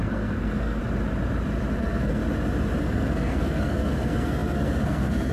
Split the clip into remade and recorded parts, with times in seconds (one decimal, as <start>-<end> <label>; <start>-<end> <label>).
0.0-0.8 remade; 0.8-1.8 recorded; 1.8-2.2 remade; 2.2-2.8 recorded; 2.8-5.3 remade